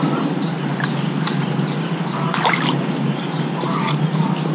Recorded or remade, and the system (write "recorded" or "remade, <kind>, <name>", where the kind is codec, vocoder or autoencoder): recorded